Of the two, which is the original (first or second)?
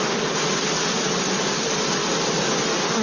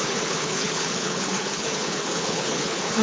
first